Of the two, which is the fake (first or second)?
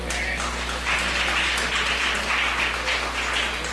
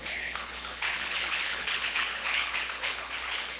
second